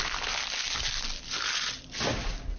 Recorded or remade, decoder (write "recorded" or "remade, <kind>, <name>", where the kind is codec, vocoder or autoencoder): recorded